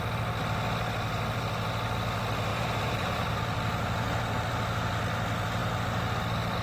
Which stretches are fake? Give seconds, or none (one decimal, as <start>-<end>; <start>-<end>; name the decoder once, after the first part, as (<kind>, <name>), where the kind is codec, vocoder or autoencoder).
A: 2.5-3.3 (vocoder, BigVGAN v2)